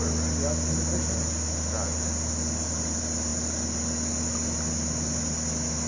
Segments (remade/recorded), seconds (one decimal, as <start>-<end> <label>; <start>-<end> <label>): 0.0-5.9 recorded